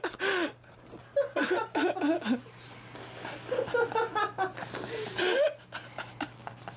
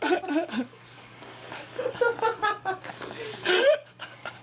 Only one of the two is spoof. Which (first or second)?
second